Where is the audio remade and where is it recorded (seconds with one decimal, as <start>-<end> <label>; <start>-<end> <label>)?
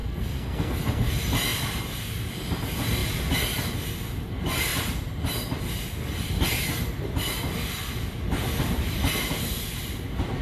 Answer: 0.0-1.1 remade; 1.1-10.4 recorded